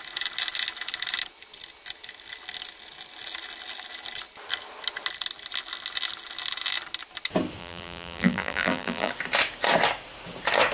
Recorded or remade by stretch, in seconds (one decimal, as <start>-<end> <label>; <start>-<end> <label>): 0.0-7.6 recorded; 7.6-9.1 remade; 9.1-10.7 recorded